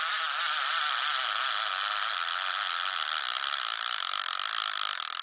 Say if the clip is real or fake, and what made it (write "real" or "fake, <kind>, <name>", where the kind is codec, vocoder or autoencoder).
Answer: real